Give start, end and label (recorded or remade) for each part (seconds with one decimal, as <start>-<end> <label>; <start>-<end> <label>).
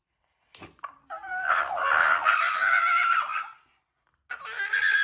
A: 0.0-1.0 recorded; 1.0-1.6 remade; 1.6-5.0 recorded